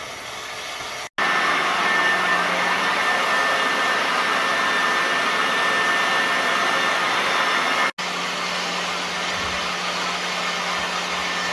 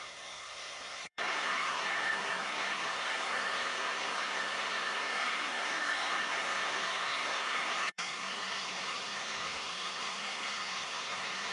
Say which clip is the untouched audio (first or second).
first